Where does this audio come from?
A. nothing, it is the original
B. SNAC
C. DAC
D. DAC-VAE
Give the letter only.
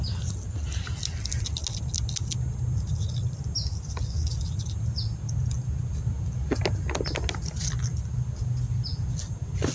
A